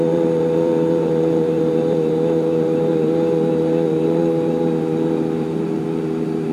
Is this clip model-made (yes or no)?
yes